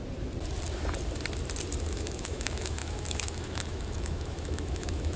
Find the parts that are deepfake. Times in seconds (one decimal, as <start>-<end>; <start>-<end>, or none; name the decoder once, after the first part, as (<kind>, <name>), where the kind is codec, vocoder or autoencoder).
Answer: 1.8-5.2 (autoencoder, DAC-VAE)